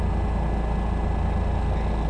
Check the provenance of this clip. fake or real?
real